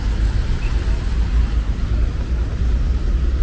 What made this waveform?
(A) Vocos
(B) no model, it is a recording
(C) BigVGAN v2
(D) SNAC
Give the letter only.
B